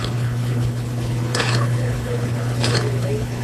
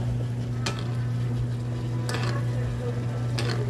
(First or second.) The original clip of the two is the second